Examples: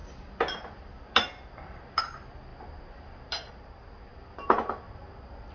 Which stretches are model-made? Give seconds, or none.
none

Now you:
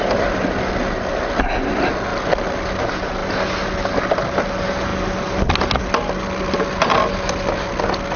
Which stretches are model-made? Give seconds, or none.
none

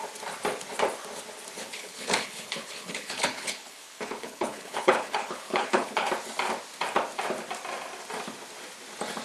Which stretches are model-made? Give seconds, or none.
1.6-6.1 (codec, HILCodec)

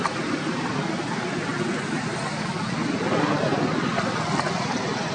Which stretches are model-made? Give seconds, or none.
none

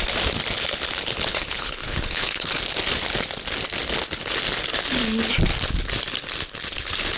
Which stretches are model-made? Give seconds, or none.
1.3-2.5 (codec, HILCodec)

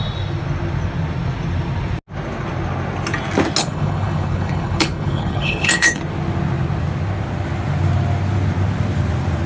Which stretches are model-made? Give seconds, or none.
3.6-6.0 (codec, HILCodec)

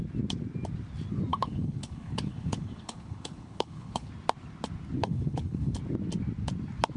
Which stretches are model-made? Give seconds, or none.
1.3-4.1 (codec, HILCodec); 5.0-5.8

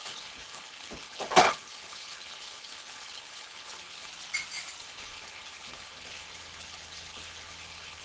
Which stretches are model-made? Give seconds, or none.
0.0-4.1 (codec, HILCodec); 4.8-8.0